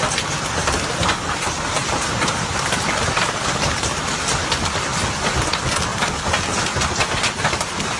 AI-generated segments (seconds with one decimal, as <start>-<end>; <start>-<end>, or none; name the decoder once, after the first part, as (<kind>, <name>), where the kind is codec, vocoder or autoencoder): 1.8-4.3 (vocoder, BigVGAN v2)